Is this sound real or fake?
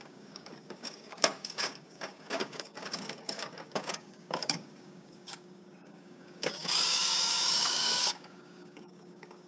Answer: fake